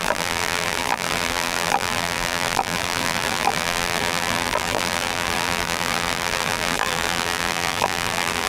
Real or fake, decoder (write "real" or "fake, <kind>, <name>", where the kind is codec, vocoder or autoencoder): fake, vocoder, BigVGAN v2